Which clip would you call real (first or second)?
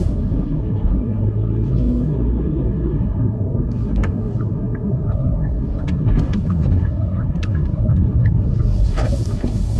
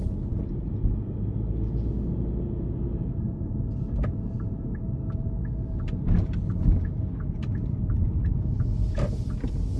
second